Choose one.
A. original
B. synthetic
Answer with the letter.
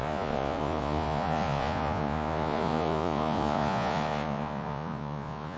B